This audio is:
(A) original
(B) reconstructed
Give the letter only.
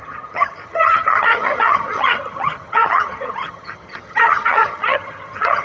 B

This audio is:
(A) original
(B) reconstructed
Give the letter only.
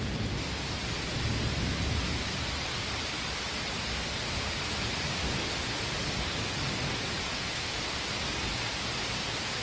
A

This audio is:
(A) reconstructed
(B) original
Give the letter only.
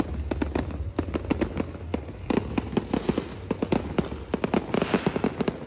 B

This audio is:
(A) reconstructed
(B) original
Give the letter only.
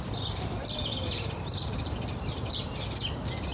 B